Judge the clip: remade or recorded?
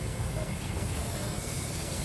remade